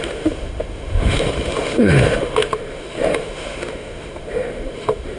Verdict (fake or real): fake